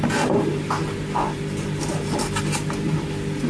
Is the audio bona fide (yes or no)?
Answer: yes